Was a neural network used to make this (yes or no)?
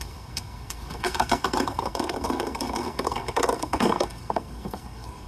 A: yes